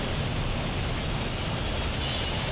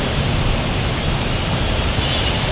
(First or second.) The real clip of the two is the first